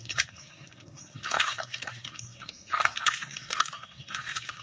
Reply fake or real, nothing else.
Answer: fake